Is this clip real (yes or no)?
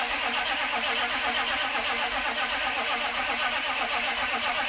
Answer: no